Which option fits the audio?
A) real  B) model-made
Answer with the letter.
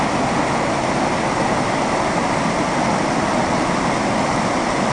A